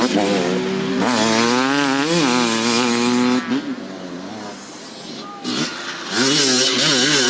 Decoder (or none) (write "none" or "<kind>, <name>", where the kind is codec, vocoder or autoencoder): none